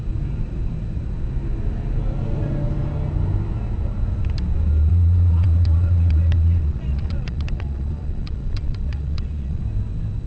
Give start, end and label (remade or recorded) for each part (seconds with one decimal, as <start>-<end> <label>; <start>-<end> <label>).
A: 0.0-4.9 recorded; 4.9-9.6 remade; 9.6-10.3 recorded